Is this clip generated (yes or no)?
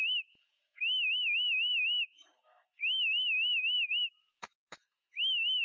yes